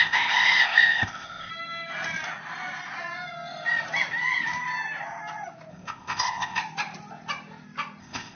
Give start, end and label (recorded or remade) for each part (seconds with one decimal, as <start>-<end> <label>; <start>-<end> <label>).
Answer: 0.0-1.5 remade; 1.5-5.7 recorded; 5.7-6.6 remade; 6.6-8.0 recorded; 8.0-8.4 remade